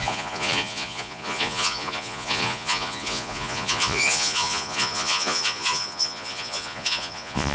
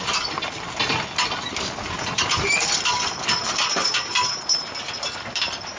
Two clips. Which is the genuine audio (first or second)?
second